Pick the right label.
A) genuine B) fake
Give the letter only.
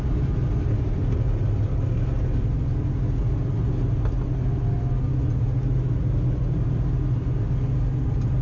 A